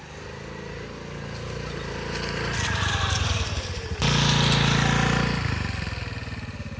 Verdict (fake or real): real